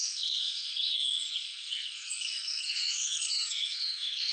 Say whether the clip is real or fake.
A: fake